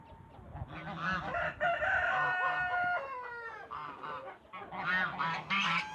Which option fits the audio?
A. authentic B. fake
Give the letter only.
A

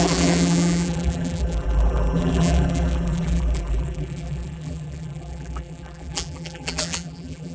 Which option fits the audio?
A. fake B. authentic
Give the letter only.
A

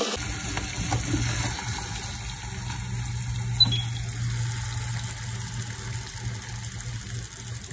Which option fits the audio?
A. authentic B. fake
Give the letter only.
A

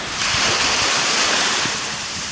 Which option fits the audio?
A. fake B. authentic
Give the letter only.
A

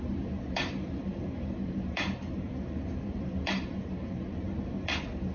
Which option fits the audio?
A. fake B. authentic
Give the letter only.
A